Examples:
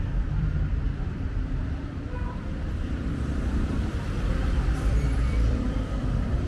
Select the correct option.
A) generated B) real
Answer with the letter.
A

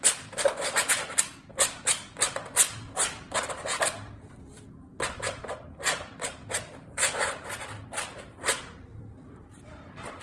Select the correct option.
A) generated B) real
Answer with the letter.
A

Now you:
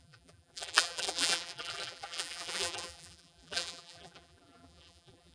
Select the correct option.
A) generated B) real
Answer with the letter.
A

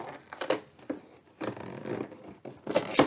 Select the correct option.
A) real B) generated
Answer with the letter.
B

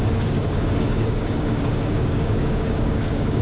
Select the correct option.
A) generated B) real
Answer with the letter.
A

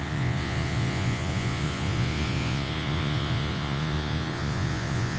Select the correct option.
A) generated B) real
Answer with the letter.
A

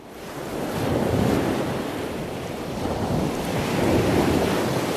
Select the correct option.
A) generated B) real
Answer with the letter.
B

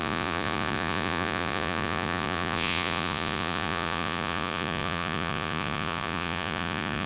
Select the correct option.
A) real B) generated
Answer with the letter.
B